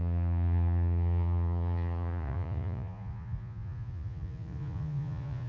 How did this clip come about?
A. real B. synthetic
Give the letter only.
B